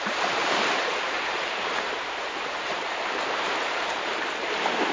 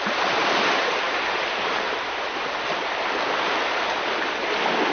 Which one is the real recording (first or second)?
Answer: second